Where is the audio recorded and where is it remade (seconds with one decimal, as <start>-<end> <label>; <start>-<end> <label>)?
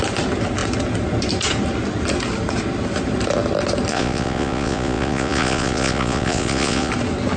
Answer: 0.0-3.9 recorded; 3.9-6.9 remade; 6.9-7.4 recorded